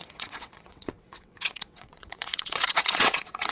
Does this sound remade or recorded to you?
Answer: remade